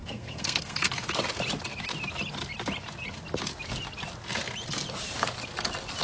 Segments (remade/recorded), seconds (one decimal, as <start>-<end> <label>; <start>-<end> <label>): 0.0-0.9 remade; 0.9-6.0 recorded